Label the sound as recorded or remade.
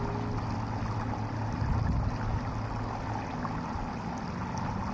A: recorded